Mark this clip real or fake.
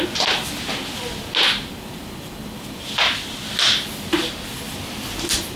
real